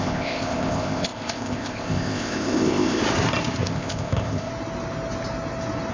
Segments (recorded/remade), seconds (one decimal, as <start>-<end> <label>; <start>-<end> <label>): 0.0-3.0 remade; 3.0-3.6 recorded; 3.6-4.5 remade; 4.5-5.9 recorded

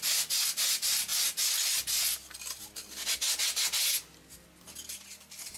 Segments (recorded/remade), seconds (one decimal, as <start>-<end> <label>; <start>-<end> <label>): 0.0-5.6 recorded

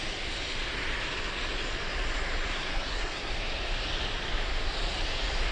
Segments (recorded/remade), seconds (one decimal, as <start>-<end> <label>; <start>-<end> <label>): 0.0-2.5 recorded; 2.5-3.3 remade; 3.3-5.5 recorded